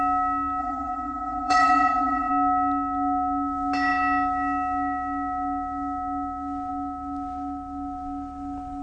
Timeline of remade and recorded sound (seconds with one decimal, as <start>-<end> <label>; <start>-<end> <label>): 0.0-0.6 recorded; 0.6-2.3 remade; 2.3-8.8 recorded